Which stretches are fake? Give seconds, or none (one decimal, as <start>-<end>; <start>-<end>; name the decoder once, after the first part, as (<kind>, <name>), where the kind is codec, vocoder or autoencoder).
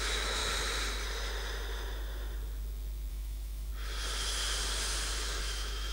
0.0-0.4 (autoencoder, DAC-VAE); 3.1-3.7; 5.4-5.9